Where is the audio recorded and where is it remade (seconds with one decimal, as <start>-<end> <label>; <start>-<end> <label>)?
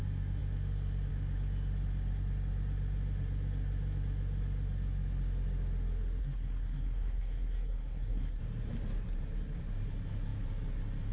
0.0-6.2 recorded; 6.2-8.4 remade; 8.4-11.1 recorded